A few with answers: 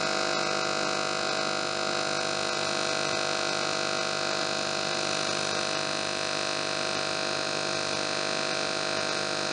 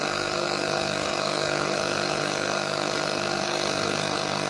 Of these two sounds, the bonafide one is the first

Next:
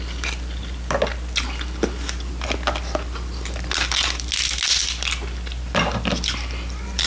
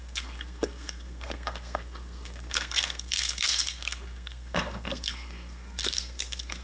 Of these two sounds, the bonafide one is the first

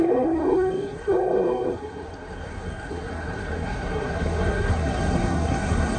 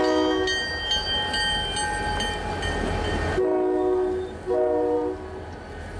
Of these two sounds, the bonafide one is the second